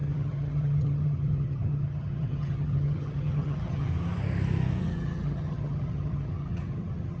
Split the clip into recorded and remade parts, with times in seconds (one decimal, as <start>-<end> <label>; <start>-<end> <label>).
0.0-3.9 remade; 3.9-4.8 recorded; 4.8-7.2 remade